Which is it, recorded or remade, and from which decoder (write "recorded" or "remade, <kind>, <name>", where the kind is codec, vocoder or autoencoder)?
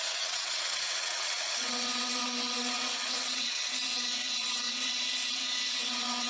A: remade, vocoder, WaveNeXt